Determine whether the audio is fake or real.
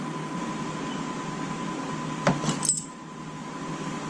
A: real